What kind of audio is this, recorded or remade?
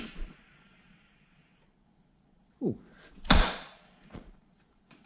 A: remade